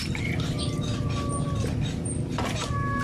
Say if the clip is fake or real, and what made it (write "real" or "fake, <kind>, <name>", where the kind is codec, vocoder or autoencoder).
real